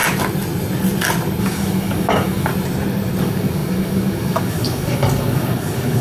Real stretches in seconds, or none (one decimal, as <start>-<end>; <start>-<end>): 0.0-1.4; 2.5-3.2